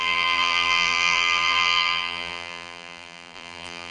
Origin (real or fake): fake